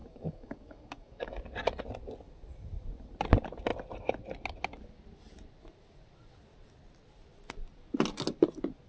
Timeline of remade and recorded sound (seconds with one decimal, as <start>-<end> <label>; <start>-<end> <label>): 0.0-1.4 remade; 1.4-8.9 recorded